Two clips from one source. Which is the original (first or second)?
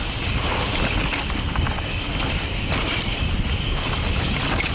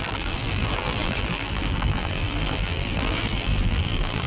first